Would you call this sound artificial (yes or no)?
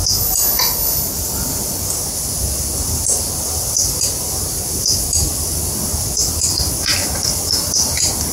no